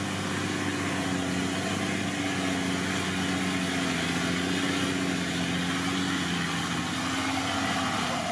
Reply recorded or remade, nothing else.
recorded